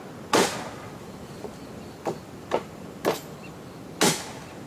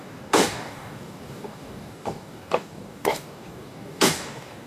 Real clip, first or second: first